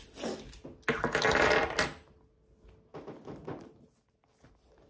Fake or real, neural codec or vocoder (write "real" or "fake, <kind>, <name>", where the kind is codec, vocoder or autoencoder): real